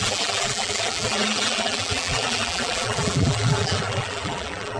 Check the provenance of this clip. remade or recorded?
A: remade